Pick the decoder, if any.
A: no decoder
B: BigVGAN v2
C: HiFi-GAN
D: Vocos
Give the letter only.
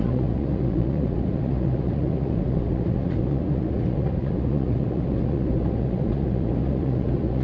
D